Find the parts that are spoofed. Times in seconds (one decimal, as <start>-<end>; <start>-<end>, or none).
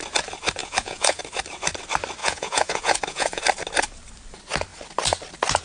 0.6-1.2; 2.2-3.4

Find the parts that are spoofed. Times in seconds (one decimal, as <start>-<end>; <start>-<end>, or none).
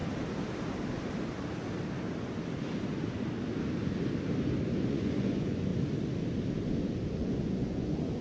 4.9-5.7; 7.1-8.2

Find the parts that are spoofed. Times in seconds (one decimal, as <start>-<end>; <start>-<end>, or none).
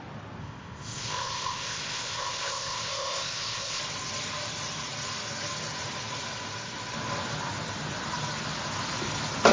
0.4-3.8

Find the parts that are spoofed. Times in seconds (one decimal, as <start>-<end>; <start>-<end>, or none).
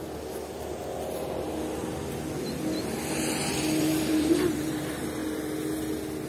3.8-5.2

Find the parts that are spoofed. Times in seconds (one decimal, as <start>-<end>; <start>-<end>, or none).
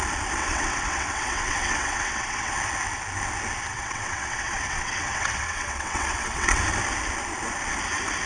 0.4-2.5; 3.7-6.6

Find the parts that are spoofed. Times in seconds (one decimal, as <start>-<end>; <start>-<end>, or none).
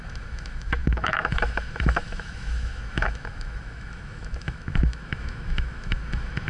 0.0-6.5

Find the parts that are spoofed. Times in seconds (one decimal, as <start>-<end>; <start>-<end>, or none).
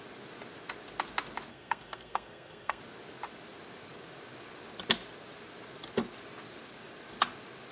1.5-2.8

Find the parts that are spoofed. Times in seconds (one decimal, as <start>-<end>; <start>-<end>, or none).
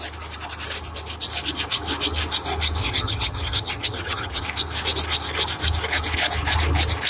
2.8-4.4